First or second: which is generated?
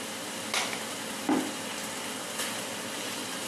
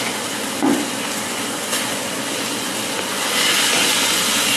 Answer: second